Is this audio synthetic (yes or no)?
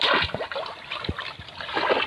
no